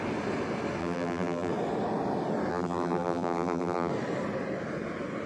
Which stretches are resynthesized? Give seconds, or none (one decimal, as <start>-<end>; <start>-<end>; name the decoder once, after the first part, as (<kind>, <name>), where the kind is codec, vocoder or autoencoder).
0.8-1.5 (vocoder, BigVGAN v2); 2.5-3.9